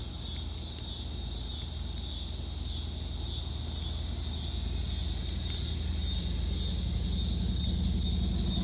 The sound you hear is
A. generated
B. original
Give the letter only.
B